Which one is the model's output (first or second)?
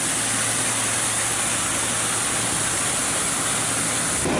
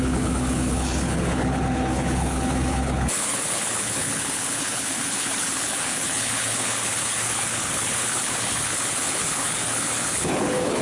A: second